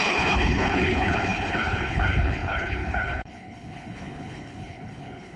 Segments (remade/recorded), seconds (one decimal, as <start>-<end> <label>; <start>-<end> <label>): 0.0-5.4 remade